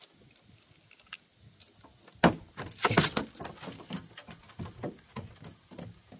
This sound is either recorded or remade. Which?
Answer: recorded